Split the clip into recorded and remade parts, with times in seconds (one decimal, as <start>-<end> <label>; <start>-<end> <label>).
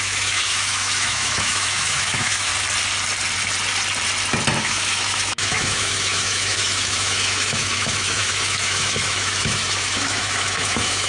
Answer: 0.0-2.5 remade; 2.5-4.6 recorded; 4.6-11.1 remade